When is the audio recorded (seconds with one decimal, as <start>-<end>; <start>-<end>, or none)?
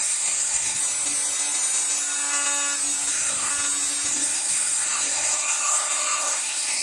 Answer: 0.8-3.1; 3.5-4.1